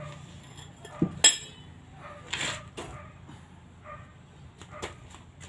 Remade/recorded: recorded